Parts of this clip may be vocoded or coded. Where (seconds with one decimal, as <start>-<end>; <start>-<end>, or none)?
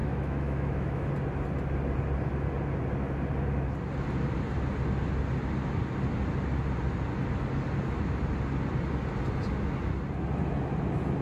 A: 0.0-1.1